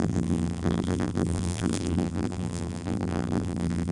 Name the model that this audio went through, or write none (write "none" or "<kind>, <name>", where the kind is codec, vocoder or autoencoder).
vocoder, BigVGAN v2